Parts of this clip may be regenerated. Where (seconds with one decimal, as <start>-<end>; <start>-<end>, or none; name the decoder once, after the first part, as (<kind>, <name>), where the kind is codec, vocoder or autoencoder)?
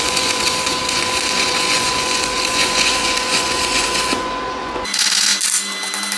0.0-5.3 (vocoder, Vocos)